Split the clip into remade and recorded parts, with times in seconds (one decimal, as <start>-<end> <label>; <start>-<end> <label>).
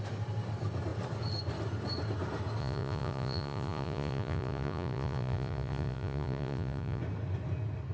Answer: 0.0-2.6 recorded; 2.6-7.0 remade; 7.0-7.9 recorded